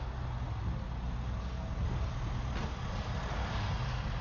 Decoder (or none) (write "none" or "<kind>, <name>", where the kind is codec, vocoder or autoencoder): none